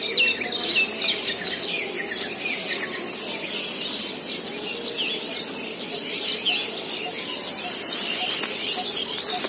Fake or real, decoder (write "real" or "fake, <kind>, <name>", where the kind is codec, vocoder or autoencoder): real